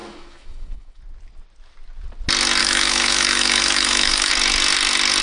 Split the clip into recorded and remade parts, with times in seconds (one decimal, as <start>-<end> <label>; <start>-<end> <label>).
0.0-1.0 remade; 1.0-2.6 recorded; 2.6-4.3 remade; 4.3-5.2 recorded